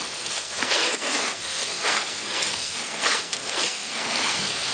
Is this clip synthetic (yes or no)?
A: yes